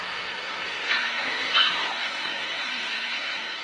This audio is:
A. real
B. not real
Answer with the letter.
B